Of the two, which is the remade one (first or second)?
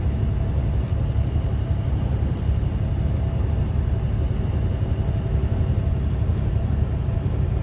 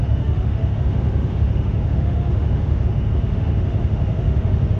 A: second